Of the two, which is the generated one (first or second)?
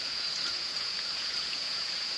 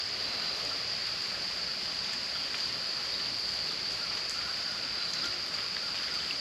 first